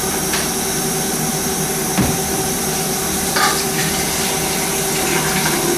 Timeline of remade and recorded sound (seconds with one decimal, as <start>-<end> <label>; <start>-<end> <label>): 0.0-1.8 recorded; 1.8-4.7 remade; 4.7-5.8 recorded